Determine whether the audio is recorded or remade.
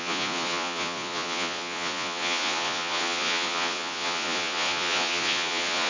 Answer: remade